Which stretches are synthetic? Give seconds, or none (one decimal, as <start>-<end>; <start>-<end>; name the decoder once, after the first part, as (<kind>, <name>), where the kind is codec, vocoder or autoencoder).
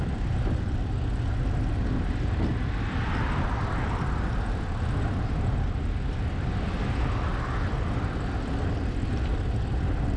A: none